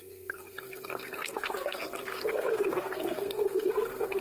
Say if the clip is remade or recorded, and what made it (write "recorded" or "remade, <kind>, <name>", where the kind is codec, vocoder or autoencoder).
remade, codec, SNAC